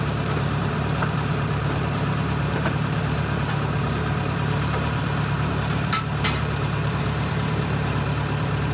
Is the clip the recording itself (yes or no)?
no